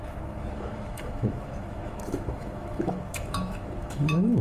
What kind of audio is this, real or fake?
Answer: fake